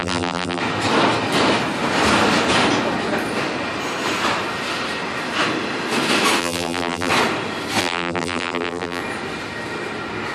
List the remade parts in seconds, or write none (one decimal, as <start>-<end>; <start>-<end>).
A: 0.0-0.6; 6.4-7.1; 7.8-9.0